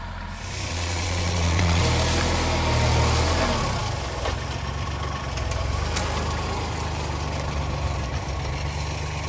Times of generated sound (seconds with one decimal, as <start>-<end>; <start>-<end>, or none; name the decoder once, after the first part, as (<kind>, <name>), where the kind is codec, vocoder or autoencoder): 0.7-1.8 (vocoder, Vocos)